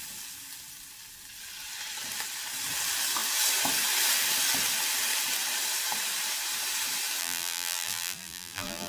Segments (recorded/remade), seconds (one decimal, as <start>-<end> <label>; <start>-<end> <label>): 0.0-7.2 recorded; 7.2-8.9 remade